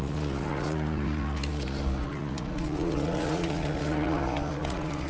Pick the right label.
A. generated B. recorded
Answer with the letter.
A